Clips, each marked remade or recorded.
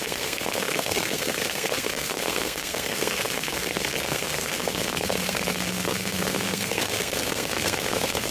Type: remade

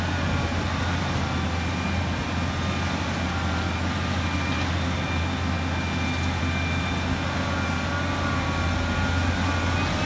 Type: recorded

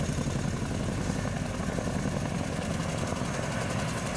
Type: recorded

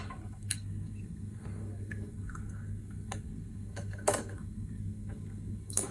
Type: remade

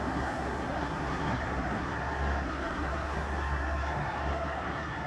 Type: remade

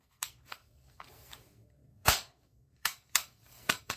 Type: remade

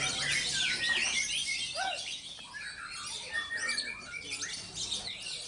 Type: recorded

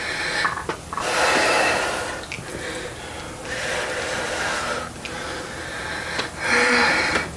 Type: recorded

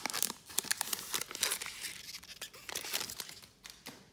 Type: recorded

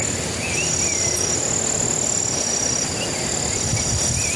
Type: recorded